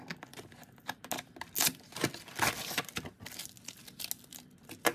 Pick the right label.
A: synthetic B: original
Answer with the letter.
B